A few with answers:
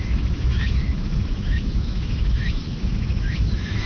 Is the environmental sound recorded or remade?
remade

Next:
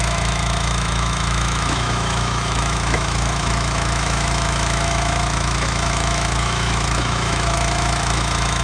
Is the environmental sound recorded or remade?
remade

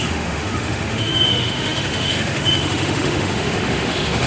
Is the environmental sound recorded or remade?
remade